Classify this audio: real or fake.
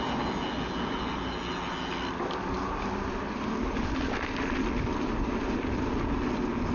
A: real